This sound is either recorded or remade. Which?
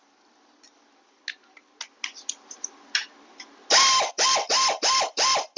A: recorded